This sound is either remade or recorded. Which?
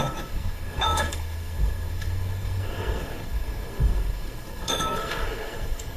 remade